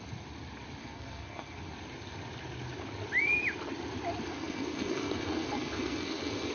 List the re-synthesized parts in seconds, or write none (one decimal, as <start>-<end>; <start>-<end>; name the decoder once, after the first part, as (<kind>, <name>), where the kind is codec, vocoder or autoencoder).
0.8-1.7 (codec, SNAC); 4.3-6.5